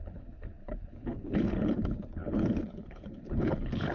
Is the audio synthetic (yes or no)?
yes